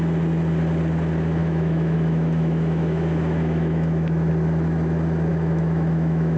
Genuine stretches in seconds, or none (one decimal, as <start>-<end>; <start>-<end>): 0.0-1.4; 4.3-5.3